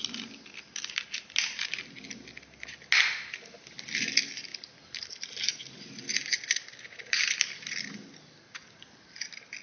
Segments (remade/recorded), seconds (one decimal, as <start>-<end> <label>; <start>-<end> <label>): 0.0-9.6 recorded